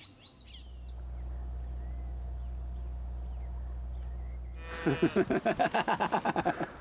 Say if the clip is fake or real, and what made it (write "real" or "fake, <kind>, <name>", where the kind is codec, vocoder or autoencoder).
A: real